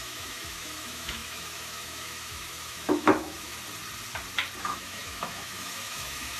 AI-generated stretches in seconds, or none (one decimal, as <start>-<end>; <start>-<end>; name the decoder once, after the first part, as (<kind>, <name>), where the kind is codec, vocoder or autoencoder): 0.0-3.5 (autoencoder, DAC-VAE); 4.6-6.4